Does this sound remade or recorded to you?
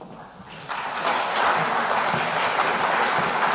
recorded